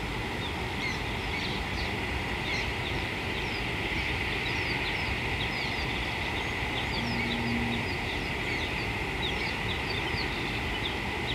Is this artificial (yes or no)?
no